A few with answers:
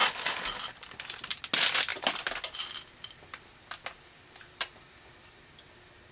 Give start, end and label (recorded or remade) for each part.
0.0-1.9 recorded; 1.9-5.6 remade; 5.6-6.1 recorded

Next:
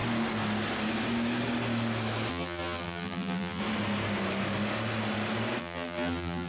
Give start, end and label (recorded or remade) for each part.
0.0-2.3 recorded; 2.3-3.6 remade; 3.6-5.6 recorded; 5.6-6.5 remade